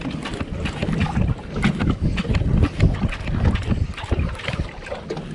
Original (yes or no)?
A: yes